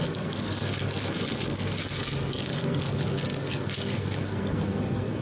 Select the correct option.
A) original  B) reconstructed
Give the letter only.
B